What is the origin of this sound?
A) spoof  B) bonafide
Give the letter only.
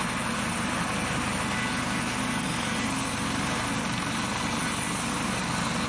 B